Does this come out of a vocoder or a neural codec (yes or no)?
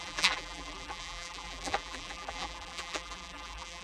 yes